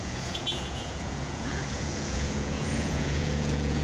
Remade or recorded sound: remade